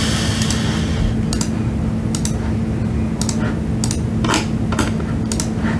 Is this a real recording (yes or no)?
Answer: yes